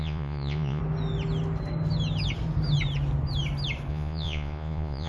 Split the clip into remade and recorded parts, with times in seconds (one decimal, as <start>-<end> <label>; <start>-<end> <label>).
0.0-0.8 remade; 0.8-3.9 recorded; 3.9-5.1 remade